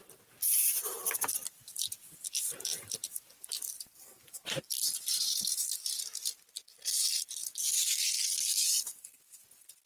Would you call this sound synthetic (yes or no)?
no